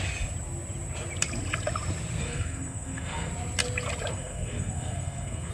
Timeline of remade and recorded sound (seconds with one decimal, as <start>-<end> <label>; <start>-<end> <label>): 0.0-2.2 recorded; 2.2-3.3 remade; 3.3-4.1 recorded; 4.1-5.5 remade